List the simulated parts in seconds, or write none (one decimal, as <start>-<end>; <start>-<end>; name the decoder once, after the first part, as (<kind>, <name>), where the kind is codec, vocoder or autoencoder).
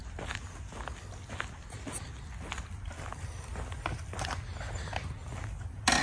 none